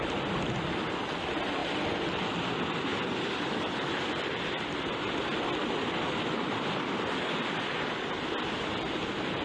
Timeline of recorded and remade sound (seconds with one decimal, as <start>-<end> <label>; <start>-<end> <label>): 0.0-1.6 recorded; 1.6-2.2 remade; 2.2-2.9 recorded; 2.9-5.1 remade; 5.1-9.4 recorded